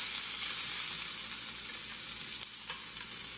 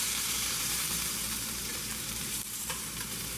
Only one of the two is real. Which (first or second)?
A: first